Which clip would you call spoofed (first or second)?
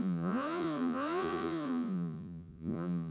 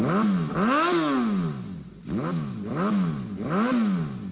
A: first